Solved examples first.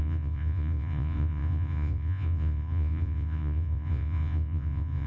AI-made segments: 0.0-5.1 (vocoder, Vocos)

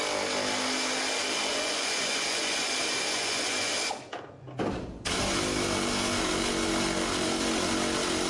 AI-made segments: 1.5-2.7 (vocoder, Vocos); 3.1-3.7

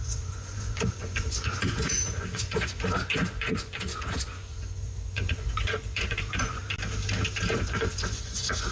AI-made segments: 0.0-6.6 (vocoder, Vocos); 7.5-8.7